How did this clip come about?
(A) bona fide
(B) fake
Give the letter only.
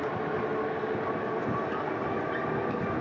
A